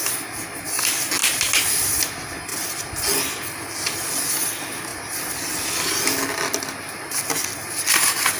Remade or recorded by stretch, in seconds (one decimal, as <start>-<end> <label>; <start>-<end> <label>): 0.0-1.2 recorded; 1.2-2.0 remade; 2.0-8.4 recorded

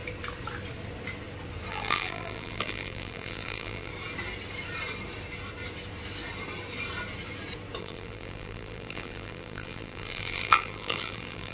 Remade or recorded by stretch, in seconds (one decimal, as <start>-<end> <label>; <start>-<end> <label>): 0.0-1.7 recorded; 1.7-3.9 remade; 3.9-7.8 recorded; 7.8-11.5 remade

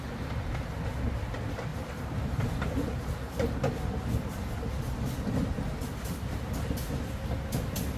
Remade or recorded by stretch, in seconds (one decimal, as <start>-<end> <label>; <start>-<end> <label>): 0.0-1.7 recorded; 1.7-2.6 remade; 2.6-8.0 recorded

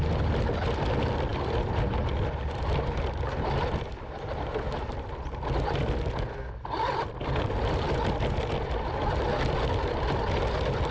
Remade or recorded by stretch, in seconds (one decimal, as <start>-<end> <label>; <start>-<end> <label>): 0.0-1.3 recorded; 1.3-6.3 remade; 6.3-10.9 recorded

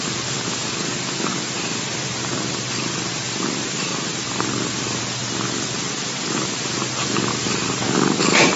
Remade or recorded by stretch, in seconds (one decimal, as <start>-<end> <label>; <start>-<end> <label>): 0.0-3.9 remade; 3.9-6.1 recorded; 6.1-7.3 remade; 7.3-8.2 recorded; 8.2-8.6 remade

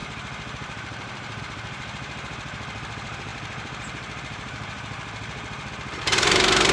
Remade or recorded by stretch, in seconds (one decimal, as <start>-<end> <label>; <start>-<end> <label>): 0.0-6.7 remade

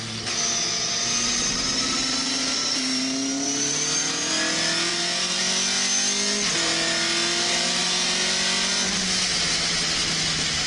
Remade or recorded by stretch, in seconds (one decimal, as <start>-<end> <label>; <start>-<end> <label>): 0.0-2.0 recorded; 2.0-4.3 remade; 4.3-4.9 recorded; 4.9-5.4 remade; 5.4-10.7 recorded